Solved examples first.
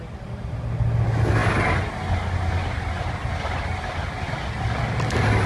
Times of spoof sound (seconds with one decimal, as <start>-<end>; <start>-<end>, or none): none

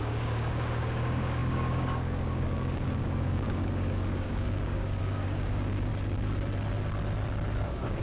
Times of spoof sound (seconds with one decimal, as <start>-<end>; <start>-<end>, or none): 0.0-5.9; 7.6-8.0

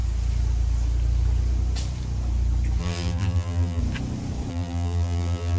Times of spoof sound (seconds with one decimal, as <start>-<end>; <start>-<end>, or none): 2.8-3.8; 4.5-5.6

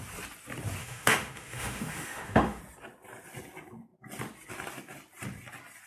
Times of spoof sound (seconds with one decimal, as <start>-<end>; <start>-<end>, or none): 0.8-2.6

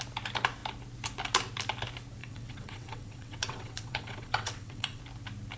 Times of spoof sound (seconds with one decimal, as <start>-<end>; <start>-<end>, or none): 2.2-5.0

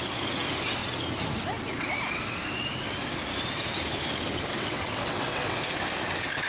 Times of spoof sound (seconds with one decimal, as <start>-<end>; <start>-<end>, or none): 4.5-5.6

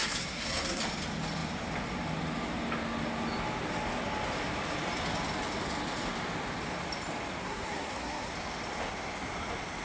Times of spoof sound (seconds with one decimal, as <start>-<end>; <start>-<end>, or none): 0.0-0.8; 7.4-8.3

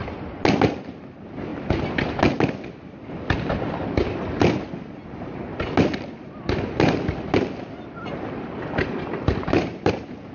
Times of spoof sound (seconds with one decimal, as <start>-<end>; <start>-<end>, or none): 9.4-9.9